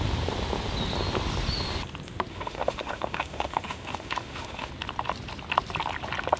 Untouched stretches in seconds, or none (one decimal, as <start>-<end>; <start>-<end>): 0.0-2.3; 4.7-6.4